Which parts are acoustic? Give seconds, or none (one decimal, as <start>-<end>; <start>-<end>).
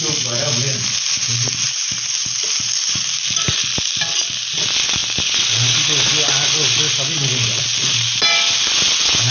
0.0-9.3